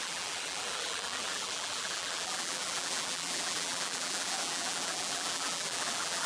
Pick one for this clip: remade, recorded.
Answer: remade